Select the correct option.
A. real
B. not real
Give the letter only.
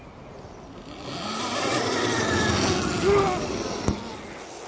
A